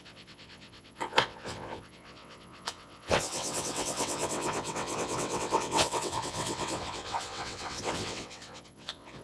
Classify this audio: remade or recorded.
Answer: remade